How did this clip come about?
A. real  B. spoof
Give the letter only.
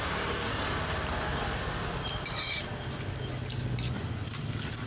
A